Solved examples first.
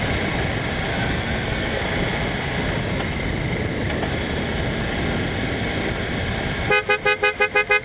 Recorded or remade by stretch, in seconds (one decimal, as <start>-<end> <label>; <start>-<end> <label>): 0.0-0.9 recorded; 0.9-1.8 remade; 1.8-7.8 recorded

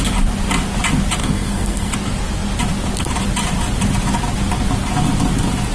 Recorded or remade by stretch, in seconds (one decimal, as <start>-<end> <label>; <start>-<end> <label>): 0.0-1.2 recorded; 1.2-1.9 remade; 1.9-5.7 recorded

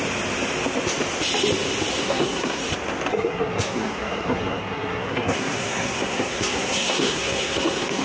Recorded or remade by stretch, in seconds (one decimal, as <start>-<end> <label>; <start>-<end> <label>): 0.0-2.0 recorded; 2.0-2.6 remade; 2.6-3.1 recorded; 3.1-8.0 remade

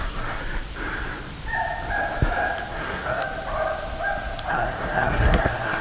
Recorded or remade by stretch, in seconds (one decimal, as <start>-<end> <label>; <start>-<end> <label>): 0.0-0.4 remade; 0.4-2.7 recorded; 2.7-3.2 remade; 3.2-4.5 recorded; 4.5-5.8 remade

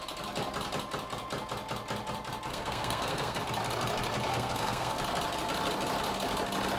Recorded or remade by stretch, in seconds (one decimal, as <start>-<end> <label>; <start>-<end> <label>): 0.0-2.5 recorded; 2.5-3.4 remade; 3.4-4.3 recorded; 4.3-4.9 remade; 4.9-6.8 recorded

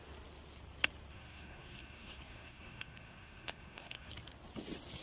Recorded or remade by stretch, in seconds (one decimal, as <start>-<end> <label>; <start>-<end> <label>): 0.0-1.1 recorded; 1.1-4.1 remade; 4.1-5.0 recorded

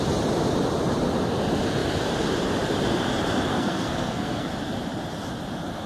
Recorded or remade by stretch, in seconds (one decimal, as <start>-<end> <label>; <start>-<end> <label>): 0.0-3.5 recorded; 3.5-4.5 remade; 4.5-5.9 recorded